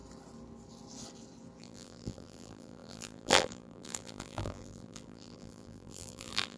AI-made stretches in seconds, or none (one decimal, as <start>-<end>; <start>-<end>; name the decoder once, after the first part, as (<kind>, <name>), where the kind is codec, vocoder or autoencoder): 1.6-6.6 (vocoder, BigVGAN v2)